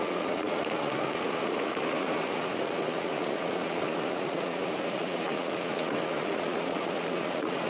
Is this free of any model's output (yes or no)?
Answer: no